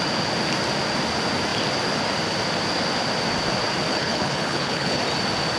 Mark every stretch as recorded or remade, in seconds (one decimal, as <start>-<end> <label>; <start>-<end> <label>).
0.0-3.9 recorded; 3.9-5.0 remade; 5.0-5.6 recorded